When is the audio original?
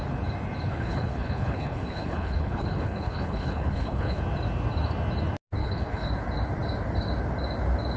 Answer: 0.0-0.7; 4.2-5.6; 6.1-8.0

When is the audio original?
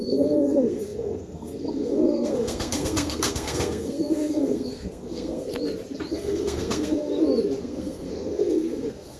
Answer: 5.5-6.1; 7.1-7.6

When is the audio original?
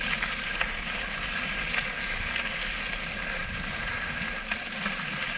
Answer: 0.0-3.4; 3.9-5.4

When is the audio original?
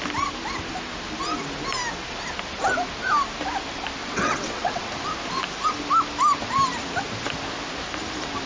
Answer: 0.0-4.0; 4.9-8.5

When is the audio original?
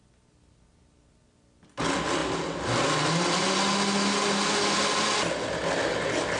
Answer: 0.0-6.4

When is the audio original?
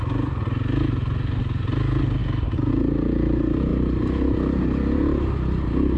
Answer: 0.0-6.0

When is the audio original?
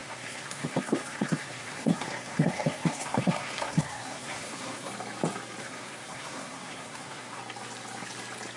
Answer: 4.9-5.6; 7.4-8.6